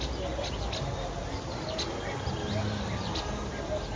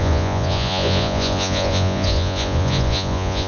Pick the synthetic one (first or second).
second